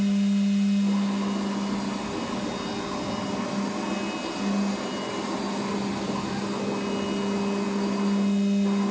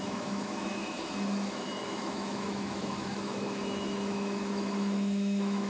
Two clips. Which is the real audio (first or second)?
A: first